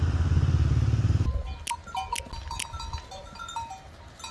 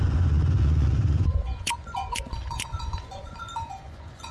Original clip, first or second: first